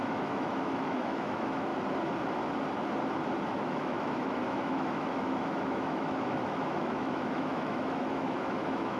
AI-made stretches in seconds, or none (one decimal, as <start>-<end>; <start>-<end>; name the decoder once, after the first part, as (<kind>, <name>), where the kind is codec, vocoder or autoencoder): 0.0-1.7 (autoencoder, DAC-VAE); 3.4-9.0